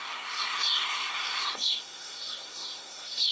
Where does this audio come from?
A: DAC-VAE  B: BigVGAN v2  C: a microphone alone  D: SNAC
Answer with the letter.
D